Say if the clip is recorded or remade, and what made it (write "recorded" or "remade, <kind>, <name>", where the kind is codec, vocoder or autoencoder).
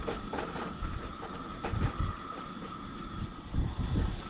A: remade, vocoder, BigVGAN v2